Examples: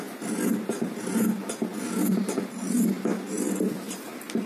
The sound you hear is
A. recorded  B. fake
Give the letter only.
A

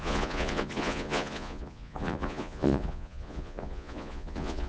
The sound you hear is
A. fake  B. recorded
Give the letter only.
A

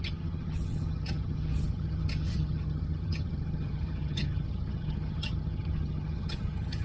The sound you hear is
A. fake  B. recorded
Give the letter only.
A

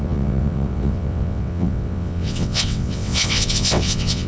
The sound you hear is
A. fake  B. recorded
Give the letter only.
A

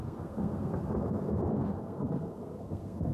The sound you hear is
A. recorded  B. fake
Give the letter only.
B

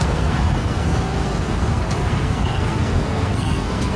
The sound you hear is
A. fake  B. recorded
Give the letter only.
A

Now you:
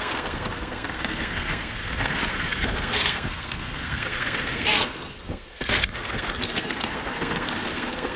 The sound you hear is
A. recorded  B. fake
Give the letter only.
B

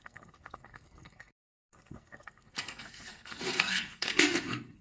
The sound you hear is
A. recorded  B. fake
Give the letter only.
B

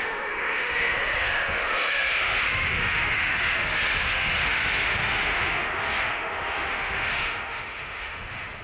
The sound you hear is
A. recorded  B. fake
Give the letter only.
B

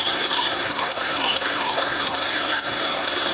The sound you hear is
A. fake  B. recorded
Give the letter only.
A